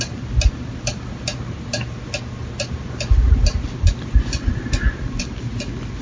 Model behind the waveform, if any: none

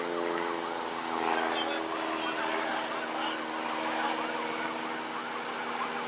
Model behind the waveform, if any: none